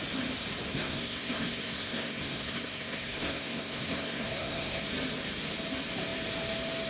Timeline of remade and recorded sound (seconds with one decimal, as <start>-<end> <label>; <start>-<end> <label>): 0.0-0.7 recorded; 0.7-4.8 remade; 4.8-6.9 recorded

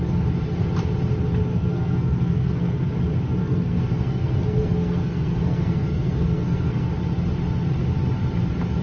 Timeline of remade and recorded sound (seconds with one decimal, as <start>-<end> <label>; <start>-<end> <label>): 0.0-1.5 recorded; 1.5-2.9 remade; 2.9-3.4 recorded; 3.4-6.9 remade; 6.9-8.8 recorded

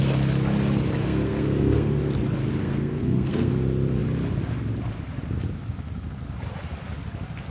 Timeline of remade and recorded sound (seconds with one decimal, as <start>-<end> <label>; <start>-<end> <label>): 0.0-1.0 recorded; 1.0-2.0 remade; 2.0-2.6 recorded; 2.6-3.5 remade; 3.5-7.5 recorded

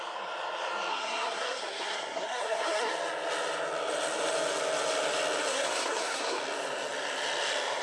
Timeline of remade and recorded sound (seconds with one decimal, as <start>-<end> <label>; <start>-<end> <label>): 0.0-0.9 recorded; 0.9-2.9 remade; 2.9-5.5 recorded; 5.5-6.4 remade; 6.4-7.8 recorded